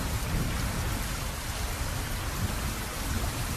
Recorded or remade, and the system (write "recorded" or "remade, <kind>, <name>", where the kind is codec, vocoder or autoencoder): recorded